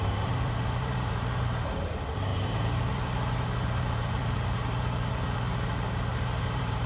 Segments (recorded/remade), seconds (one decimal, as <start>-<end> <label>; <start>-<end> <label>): 0.0-6.9 remade